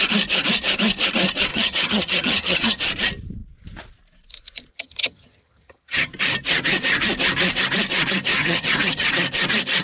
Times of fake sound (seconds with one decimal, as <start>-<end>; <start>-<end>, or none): 1.5-2.8; 4.7-6.1; 8.3-9.1